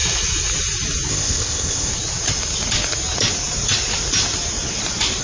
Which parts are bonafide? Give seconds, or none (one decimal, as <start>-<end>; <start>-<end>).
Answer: 0.0-1.1; 1.9-5.2